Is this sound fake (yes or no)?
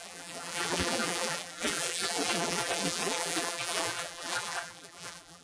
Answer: yes